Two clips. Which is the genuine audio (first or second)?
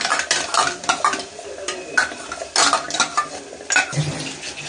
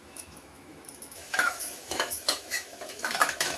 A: first